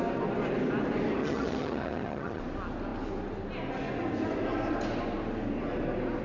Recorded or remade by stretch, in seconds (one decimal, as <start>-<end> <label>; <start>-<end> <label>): 0.0-1.2 recorded; 1.2-2.4 remade; 2.4-6.2 recorded